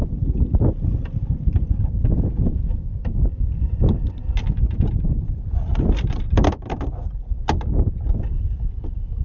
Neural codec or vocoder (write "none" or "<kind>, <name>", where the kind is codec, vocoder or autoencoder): vocoder, BigVGAN v2